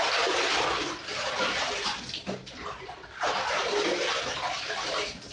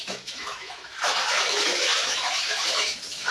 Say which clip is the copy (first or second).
second